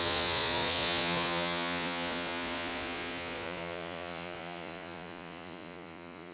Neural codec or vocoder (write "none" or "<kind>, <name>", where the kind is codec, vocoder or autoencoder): vocoder, Vocos